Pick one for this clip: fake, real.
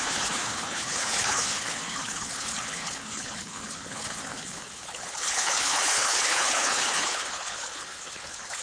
fake